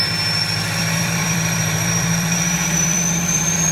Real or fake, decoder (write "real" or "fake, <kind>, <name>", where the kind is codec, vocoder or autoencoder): fake, vocoder, BigVGAN v2